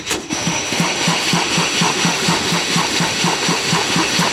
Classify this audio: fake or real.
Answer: fake